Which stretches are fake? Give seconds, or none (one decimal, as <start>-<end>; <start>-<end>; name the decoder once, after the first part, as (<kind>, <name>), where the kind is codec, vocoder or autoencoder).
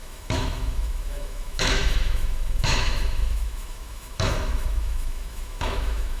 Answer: 0.0-6.2 (autoencoder, DAC-VAE)